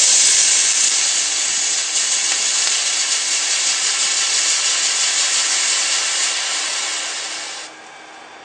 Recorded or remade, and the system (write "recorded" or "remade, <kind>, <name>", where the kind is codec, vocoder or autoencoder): recorded